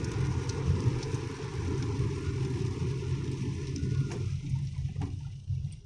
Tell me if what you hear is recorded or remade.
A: recorded